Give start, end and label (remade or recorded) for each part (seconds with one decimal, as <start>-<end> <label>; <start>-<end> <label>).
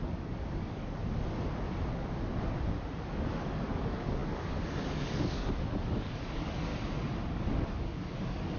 0.0-1.0 remade; 1.0-3.1 recorded; 3.1-6.7 remade; 6.7-7.3 recorded; 7.3-8.6 remade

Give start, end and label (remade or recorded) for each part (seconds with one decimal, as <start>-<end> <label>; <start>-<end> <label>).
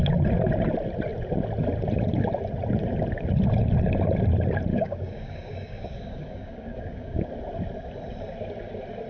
0.0-4.7 recorded; 4.7-7.3 remade; 7.3-9.1 recorded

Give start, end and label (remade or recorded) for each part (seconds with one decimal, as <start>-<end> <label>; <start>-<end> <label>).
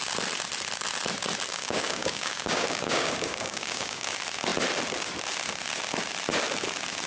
0.0-1.5 recorded; 1.5-4.1 remade; 4.1-7.1 recorded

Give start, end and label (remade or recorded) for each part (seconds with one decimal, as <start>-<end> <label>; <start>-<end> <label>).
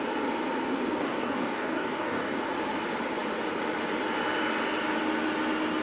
0.0-1.0 recorded; 1.0-2.4 remade; 2.4-5.8 recorded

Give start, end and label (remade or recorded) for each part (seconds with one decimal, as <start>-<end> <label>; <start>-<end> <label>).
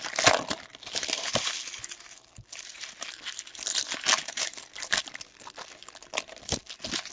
0.0-7.1 recorded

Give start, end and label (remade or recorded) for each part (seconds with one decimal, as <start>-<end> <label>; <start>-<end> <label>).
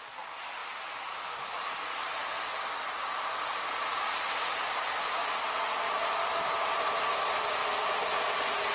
0.0-8.7 recorded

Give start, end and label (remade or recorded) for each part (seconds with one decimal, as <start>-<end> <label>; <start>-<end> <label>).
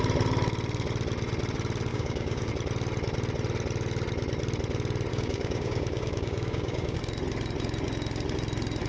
0.0-1.9 recorded; 1.9-2.5 remade; 2.5-5.1 recorded; 5.1-7.0 remade; 7.0-8.9 recorded